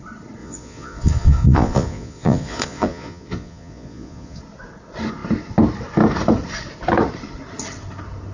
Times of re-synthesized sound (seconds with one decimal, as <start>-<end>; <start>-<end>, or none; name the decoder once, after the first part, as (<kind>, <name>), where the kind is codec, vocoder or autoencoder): 0.4-4.4 (vocoder, Vocos)